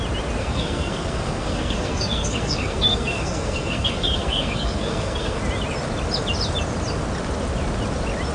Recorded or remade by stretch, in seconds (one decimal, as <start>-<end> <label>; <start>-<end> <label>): 0.0-0.4 recorded; 0.4-5.4 remade; 5.4-8.3 recorded